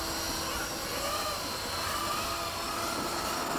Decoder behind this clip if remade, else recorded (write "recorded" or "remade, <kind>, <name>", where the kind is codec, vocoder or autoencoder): recorded